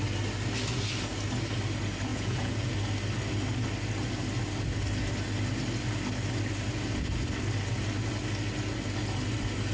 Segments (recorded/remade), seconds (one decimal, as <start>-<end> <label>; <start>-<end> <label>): 0.0-2.1 recorded; 2.1-2.7 remade; 2.7-9.7 recorded